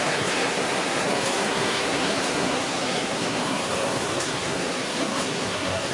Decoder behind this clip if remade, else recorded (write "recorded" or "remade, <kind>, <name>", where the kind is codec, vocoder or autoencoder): remade, codec, SNAC